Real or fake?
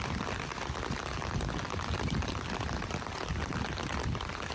real